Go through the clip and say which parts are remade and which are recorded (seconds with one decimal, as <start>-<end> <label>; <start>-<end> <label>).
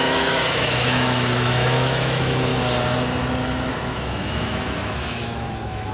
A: 0.0-2.5 remade; 2.5-3.7 recorded; 3.7-5.9 remade